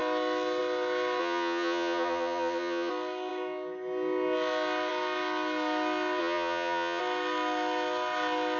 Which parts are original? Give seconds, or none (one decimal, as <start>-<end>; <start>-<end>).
0.0-1.2; 2.9-6.2; 7.0-8.6